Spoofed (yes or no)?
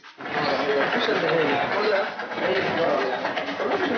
no